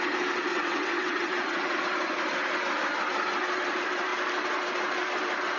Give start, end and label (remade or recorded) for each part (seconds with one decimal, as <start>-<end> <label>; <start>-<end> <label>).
0.0-0.5 recorded; 0.5-1.8 remade; 1.8-5.6 recorded